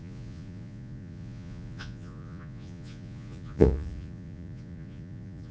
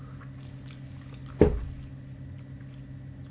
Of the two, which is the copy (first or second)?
first